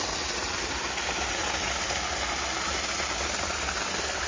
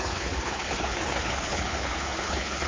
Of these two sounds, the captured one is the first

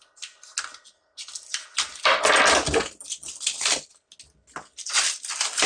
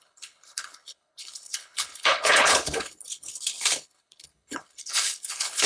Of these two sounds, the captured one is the first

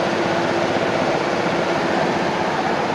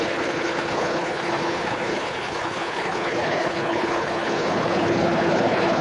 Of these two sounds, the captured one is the first